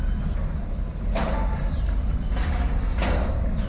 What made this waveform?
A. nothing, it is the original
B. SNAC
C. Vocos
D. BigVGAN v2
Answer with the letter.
A